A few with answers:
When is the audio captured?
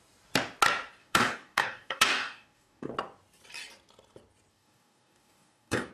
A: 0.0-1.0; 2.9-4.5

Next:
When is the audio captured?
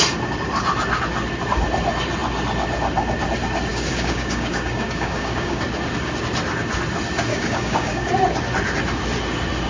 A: 0.0-3.7; 5.6-7.3; 8.1-9.7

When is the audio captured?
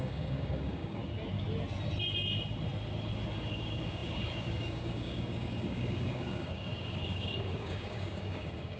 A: 1.0-3.5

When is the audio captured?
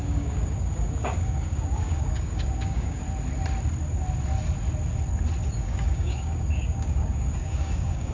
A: 3.0-5.5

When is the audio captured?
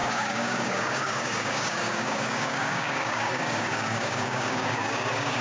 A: none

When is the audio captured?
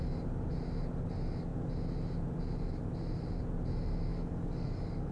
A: 0.0-4.1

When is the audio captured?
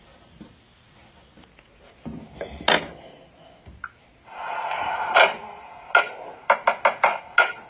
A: 0.0-7.7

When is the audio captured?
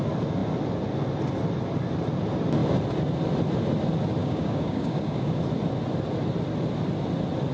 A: 0.0-4.2; 5.4-7.5